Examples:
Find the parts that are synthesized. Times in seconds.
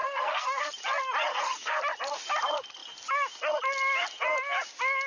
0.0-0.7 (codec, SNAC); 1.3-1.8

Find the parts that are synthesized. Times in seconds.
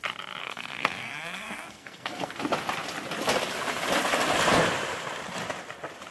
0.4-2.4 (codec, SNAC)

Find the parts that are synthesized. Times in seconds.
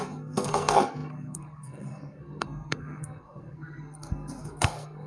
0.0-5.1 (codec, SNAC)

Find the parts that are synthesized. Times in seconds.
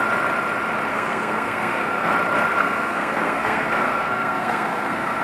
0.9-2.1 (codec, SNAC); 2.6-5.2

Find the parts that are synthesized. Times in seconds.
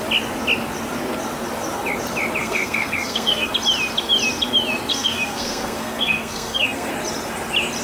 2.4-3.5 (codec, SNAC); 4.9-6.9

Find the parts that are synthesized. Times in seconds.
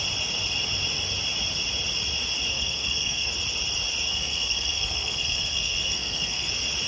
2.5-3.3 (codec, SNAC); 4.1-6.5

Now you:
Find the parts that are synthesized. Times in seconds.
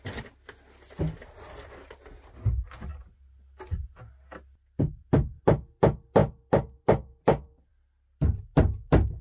none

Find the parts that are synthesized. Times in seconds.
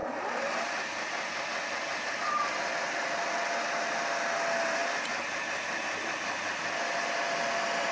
none